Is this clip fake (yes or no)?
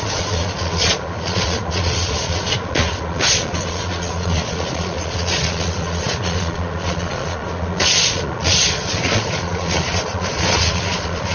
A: yes